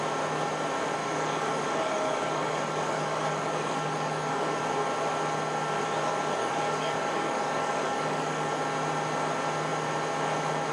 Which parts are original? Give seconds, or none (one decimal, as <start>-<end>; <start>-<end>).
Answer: 0.0-1.0; 4.6-6.4; 8.5-10.7

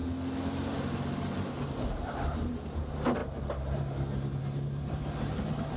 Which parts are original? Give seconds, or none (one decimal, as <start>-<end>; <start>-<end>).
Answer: 0.0-5.8

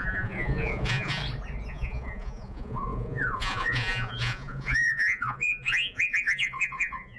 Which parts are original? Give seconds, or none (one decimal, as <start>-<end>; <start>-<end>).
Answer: 1.2-1.7

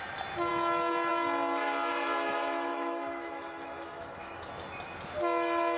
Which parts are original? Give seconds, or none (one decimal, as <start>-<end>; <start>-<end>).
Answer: 0.0-2.7; 4.5-5.8

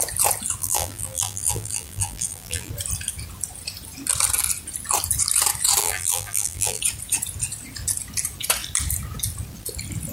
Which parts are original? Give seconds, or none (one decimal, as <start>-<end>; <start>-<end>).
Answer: 0.0-0.6; 2.7-5.8; 6.8-10.1